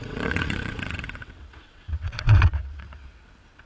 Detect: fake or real fake